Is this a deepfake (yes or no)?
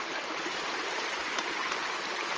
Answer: yes